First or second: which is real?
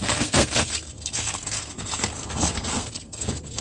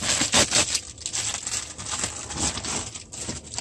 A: second